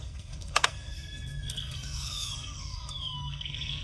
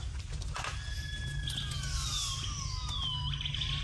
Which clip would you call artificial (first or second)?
first